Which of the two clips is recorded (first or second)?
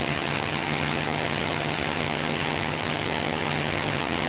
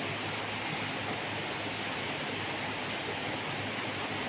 second